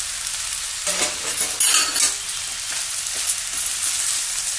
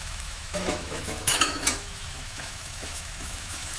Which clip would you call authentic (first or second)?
first